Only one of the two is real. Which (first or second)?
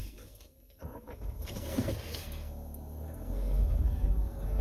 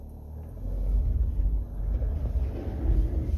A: second